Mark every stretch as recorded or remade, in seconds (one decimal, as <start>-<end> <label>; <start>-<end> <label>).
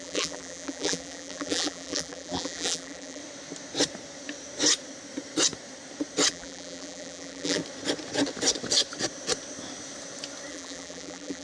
0.0-3.2 remade; 3.2-6.3 recorded; 6.3-7.6 remade; 7.6-10.5 recorded; 10.5-11.4 remade